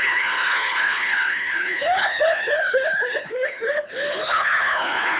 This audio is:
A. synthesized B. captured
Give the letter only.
A